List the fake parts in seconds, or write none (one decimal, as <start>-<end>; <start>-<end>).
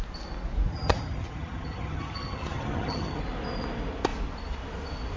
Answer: 0.7-3.2